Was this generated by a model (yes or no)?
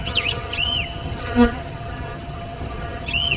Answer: yes